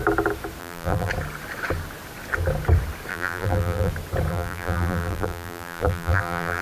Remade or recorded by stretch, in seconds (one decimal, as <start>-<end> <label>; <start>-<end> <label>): 0.0-0.6 recorded; 0.6-1.1 remade; 1.1-3.1 recorded; 3.1-3.9 remade; 3.9-4.3 recorded; 4.3-6.6 remade